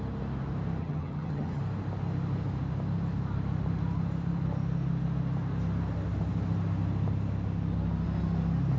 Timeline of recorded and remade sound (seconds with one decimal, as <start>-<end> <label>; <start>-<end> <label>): 0.0-0.8 recorded; 0.8-1.6 remade; 1.6-8.8 recorded